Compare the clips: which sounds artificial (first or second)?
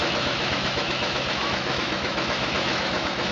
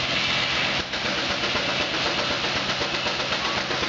first